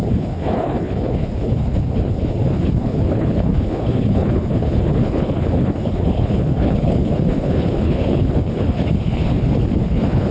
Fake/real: fake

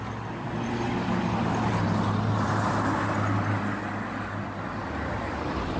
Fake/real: real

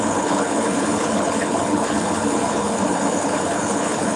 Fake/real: fake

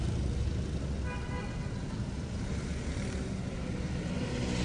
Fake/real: real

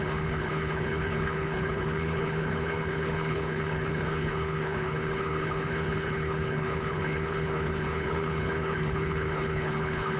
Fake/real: fake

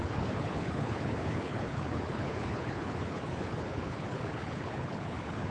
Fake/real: fake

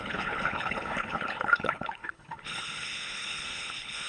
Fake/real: fake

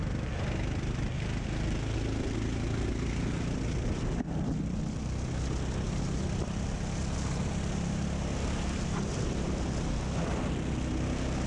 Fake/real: real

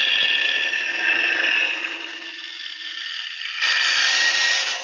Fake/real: real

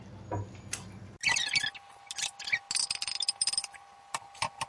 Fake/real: real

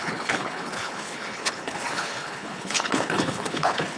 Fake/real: fake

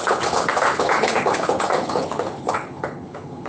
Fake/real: fake